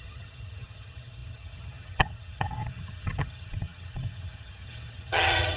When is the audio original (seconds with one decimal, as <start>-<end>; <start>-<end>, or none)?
none